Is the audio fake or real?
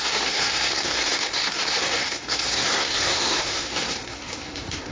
fake